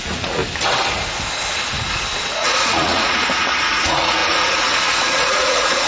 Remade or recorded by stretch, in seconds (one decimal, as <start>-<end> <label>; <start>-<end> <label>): 0.0-0.4 remade; 0.4-2.3 recorded; 2.3-5.9 remade